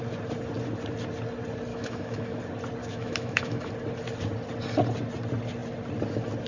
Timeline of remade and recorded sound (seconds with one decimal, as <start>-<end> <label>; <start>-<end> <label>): 0.0-1.7 recorded; 1.7-2.4 remade; 2.4-2.8 recorded; 2.8-3.7 remade; 3.7-6.5 recorded